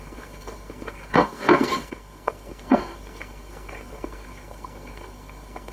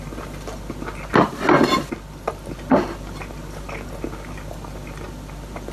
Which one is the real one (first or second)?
second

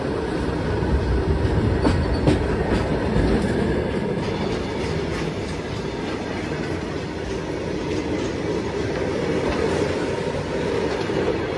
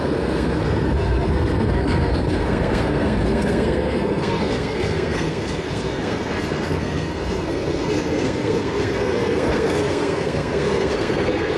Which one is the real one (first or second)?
first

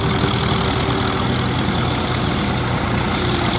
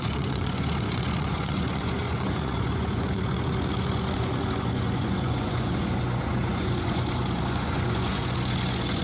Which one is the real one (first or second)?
first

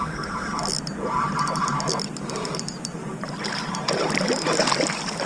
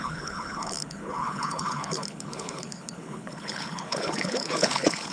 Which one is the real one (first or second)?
first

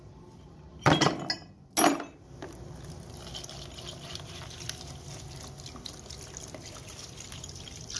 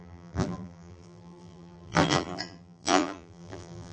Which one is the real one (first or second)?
first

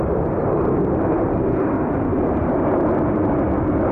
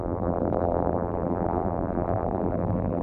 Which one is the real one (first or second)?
first